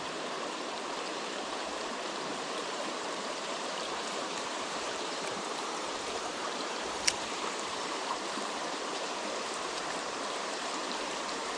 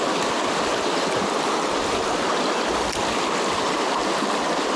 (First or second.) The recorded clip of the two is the second